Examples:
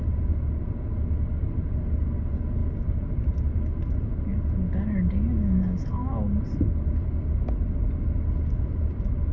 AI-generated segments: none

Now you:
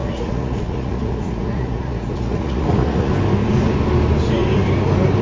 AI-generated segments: 0.0-3.1

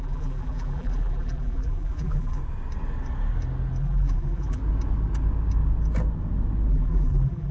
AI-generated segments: 0.0-2.4; 3.8-4.6; 6.7-7.5

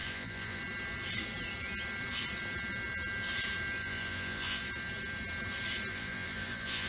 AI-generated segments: 0.0-0.6; 3.8-4.6; 5.9-6.9

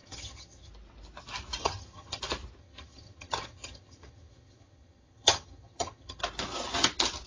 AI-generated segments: 0.0-0.7; 1.6-2.2; 2.6-6.2

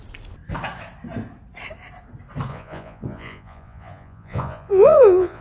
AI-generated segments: 2.5-5.4

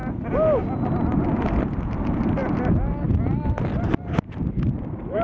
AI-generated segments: 0.7-2.4; 4.6-5.2

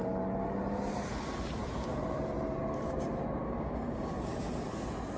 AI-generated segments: 3.4-4.1